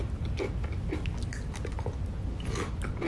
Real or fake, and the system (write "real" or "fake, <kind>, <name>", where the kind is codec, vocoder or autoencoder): real